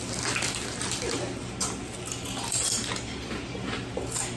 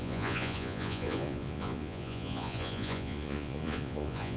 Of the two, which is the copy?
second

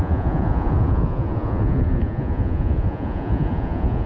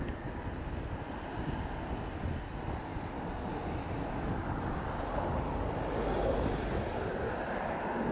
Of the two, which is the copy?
first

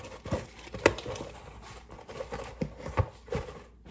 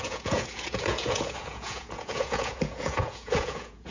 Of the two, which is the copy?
second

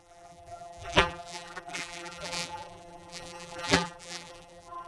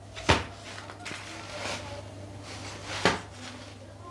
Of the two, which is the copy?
first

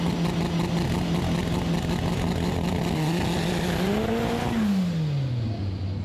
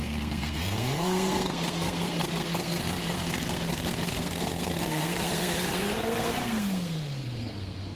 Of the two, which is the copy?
second